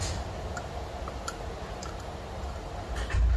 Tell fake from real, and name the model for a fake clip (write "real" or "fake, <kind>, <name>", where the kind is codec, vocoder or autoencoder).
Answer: real